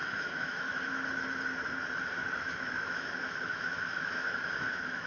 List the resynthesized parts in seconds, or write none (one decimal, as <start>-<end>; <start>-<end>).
0.0-0.9; 2.2-5.1